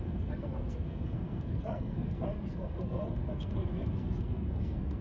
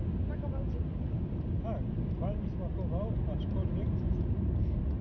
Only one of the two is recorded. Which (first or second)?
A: second